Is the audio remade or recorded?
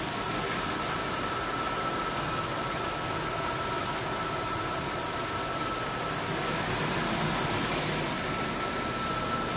recorded